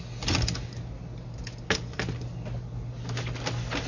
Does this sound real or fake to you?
real